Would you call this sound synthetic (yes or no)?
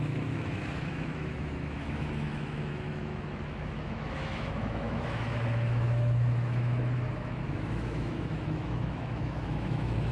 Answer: yes